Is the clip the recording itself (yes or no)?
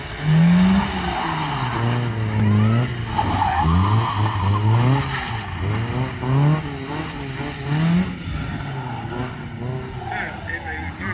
yes